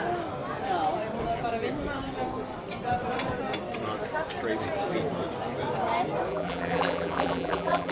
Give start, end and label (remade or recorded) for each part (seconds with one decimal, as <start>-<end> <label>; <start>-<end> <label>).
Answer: 0.0-6.3 recorded; 6.3-7.9 remade